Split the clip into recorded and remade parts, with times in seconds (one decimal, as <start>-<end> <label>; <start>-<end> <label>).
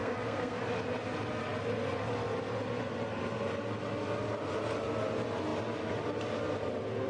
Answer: 0.0-0.6 remade; 0.6-7.1 recorded